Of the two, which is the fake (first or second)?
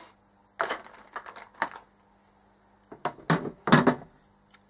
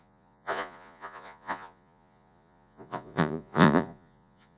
second